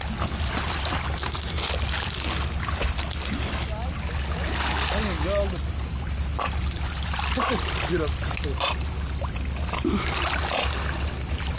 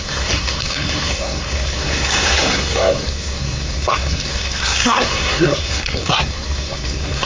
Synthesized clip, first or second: second